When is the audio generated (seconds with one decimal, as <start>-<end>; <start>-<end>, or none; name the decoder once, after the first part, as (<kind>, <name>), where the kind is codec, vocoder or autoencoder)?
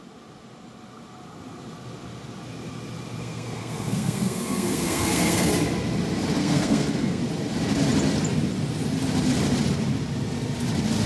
3.2-5.5 (codec, SNAC); 6.4-7.2